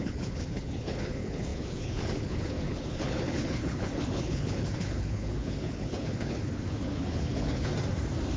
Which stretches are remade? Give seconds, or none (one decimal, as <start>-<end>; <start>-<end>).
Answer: 0.0-7.7